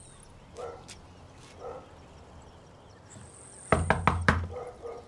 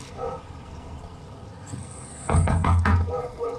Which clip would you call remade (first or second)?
second